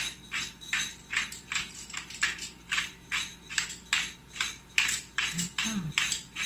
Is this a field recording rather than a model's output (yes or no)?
no